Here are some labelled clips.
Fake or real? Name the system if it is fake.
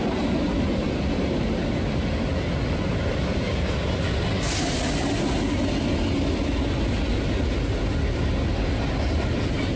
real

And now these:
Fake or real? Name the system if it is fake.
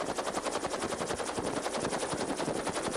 real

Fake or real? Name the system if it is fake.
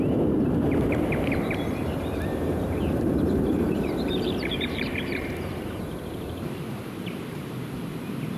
fake, vocoder, BigVGAN v2